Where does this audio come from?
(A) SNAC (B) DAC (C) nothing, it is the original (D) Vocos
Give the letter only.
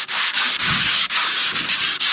B